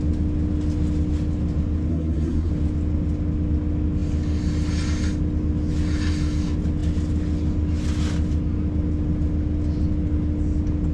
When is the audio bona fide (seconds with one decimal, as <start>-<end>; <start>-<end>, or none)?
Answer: 0.0-1.9; 2.5-10.9